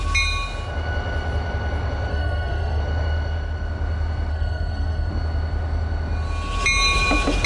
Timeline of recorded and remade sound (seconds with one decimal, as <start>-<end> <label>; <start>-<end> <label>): 0.0-2.1 recorded; 2.1-2.8 remade; 2.8-4.3 recorded; 4.3-5.1 remade; 5.1-7.5 recorded